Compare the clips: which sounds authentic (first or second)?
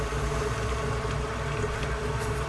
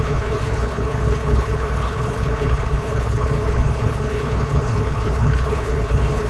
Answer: first